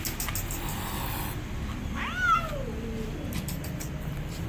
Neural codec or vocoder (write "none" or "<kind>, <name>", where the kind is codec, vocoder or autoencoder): none